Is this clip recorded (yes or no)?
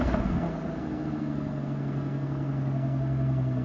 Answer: no